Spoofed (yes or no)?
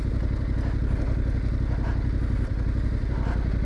no